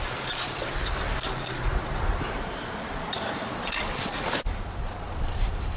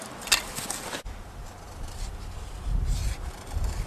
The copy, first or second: first